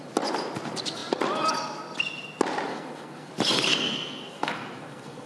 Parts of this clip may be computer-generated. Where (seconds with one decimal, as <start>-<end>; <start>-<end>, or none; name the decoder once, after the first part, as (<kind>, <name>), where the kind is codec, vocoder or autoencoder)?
2.7-3.3 (codec, SNAC); 3.7-5.3